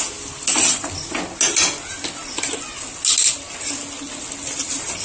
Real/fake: real